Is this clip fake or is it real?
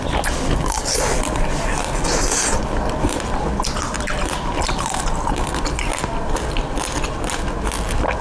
real